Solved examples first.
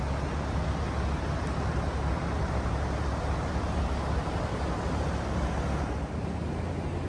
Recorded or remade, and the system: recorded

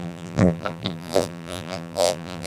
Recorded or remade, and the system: remade, vocoder, BigVGAN v2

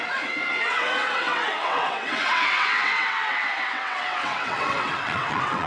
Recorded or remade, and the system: remade, vocoder, WaveNeXt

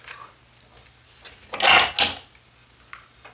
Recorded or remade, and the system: recorded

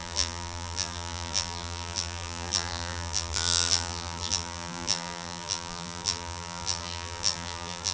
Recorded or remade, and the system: remade, vocoder, BigVGAN v2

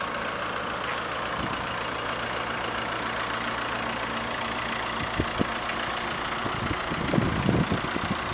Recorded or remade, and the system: recorded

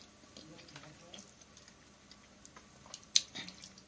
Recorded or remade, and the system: recorded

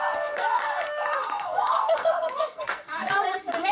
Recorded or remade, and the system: remade, codec, SNAC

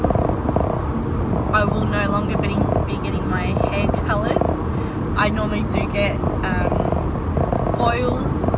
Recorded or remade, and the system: recorded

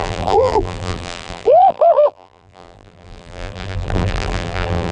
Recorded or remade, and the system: remade, vocoder, BigVGAN v2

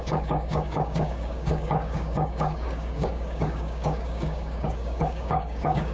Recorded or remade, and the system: remade, codec, DAC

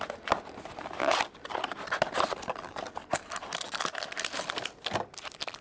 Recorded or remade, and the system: recorded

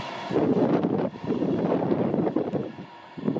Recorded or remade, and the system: recorded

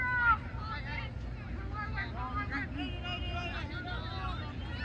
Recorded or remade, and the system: recorded